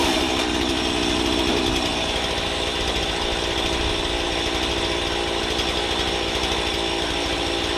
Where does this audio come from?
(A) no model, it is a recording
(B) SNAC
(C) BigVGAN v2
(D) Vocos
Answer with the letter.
A